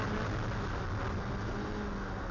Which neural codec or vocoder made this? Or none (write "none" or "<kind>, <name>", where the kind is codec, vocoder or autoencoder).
none